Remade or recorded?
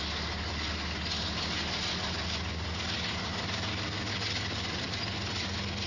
recorded